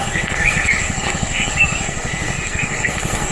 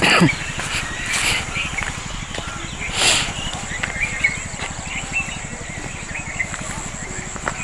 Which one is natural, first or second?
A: second